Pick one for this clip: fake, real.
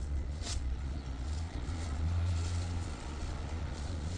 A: fake